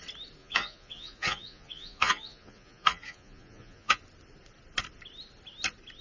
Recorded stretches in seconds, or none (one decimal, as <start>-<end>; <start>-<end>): 0.0-0.4; 4.0-6.0